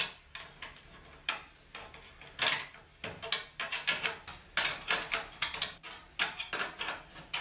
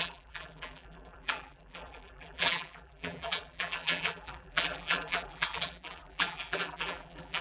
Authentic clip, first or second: first